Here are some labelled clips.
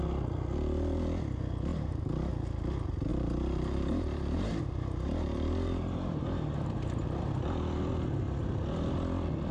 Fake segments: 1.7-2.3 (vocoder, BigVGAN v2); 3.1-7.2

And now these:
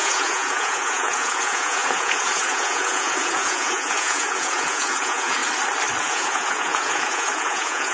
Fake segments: 0.0-5.4 (vocoder, Vocos); 6.0-7.9

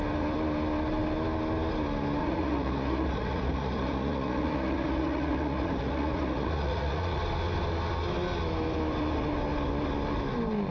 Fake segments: 2.2-7.2 (vocoder, Vocos)

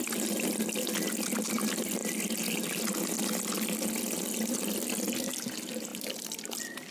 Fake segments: 5.9-6.9 (vocoder, BigVGAN v2)

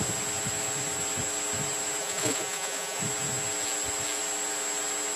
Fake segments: 2.0-3.0 (vocoder, Vocos)

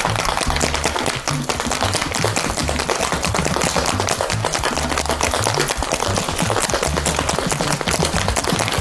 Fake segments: 2.6-3.6 (vocoder, BigVGAN v2)

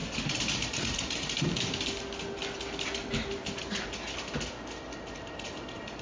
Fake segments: none